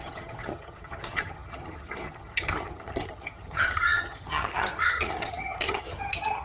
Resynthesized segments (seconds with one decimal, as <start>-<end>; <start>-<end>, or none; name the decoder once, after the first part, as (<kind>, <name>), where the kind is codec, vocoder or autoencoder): 0.0-6.4 (vocoder, HiFi-GAN)